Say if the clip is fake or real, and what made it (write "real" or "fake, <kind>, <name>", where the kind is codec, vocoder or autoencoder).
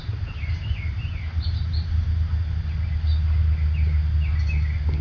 real